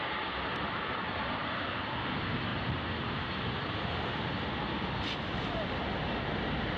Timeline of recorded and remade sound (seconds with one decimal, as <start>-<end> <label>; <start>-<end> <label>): 0.0-2.5 recorded; 2.5-4.4 remade; 4.4-5.3 recorded; 5.3-5.8 remade; 5.8-6.8 recorded